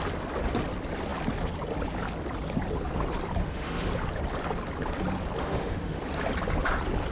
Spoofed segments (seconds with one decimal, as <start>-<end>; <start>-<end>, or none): 3.4-3.9; 5.4-6.0